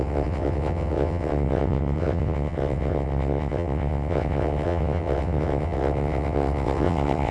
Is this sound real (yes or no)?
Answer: no